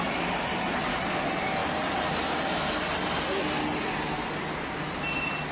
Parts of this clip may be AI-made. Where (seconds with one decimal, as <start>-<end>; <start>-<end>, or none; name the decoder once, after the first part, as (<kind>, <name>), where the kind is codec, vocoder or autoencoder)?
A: none